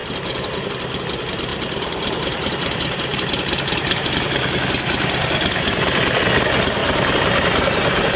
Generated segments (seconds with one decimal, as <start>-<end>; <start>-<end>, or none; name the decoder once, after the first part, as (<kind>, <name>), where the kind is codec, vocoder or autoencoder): 1.5-4.1 (vocoder, BigVGAN v2); 6.8-8.2